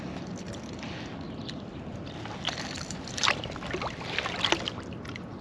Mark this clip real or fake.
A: real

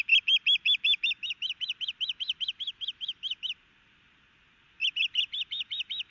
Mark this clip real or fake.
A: real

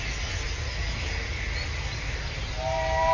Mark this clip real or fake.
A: real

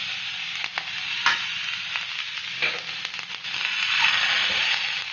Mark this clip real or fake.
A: real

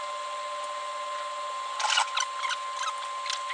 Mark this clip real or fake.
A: real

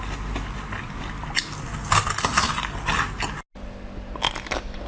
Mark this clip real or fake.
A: real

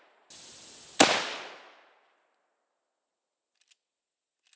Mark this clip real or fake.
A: real